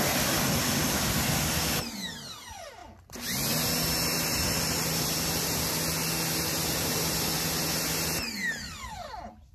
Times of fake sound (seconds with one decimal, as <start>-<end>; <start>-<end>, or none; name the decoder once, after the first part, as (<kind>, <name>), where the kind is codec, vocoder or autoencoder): none